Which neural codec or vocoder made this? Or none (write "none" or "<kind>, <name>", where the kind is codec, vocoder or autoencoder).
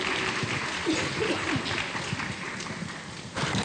none